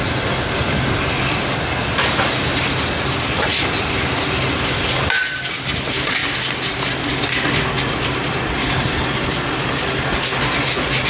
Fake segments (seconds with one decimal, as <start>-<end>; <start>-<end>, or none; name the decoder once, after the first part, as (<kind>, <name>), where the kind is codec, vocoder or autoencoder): none